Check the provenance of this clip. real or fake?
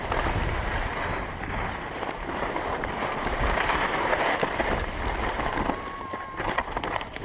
real